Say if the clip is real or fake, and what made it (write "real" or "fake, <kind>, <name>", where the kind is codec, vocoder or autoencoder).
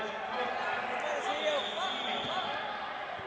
real